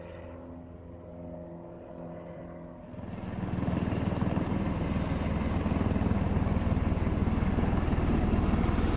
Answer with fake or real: real